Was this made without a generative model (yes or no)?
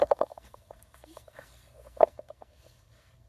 no